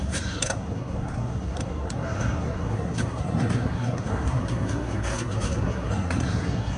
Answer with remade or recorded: remade